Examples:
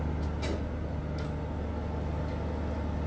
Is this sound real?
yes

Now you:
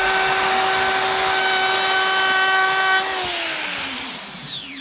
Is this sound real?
yes